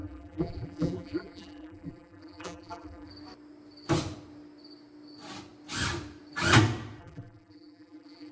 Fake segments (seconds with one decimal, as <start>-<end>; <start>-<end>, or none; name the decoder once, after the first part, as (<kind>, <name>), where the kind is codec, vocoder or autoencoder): 0.0-3.1 (vocoder, BigVGAN v2); 7.0-8.3